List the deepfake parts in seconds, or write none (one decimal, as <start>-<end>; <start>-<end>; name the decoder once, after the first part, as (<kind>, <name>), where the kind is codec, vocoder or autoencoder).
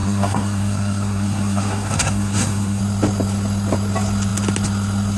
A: 0.0-2.8 (codec, SNAC)